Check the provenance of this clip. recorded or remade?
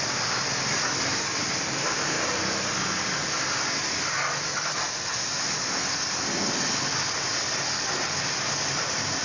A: recorded